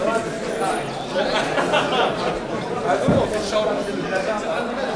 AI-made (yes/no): no